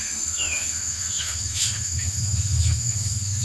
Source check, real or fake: fake